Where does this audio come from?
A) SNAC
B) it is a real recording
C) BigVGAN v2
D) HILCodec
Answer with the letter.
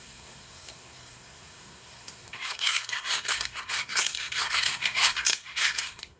A